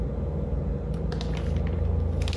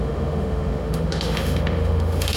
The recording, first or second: first